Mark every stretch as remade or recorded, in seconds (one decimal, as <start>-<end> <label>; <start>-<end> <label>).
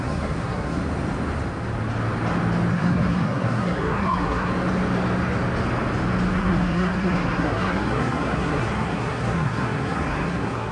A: 0.0-0.8 remade; 0.8-2.7 recorded; 2.7-4.5 remade; 4.5-6.3 recorded; 6.3-10.7 remade